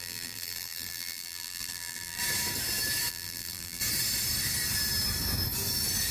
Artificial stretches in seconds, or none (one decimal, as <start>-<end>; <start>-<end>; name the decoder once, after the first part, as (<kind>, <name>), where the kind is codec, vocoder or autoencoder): 0.0-2.2 (vocoder, BigVGAN v2); 3.1-3.8